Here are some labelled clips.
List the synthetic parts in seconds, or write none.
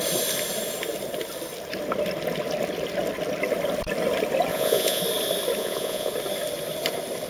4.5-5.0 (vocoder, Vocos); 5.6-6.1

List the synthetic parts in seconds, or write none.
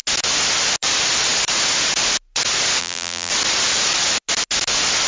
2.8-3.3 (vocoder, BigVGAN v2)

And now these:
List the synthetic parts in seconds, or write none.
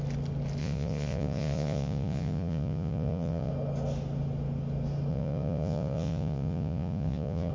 0.6-3.5 (vocoder, Vocos); 5.1-7.5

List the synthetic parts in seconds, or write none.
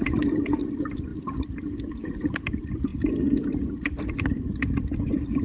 0.0-2.9 (vocoder, BigVGAN v2); 3.9-5.4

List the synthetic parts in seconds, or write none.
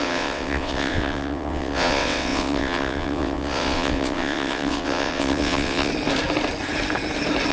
0.0-5.9 (vocoder, WaveNeXt)